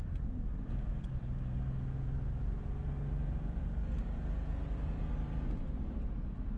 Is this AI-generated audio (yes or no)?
no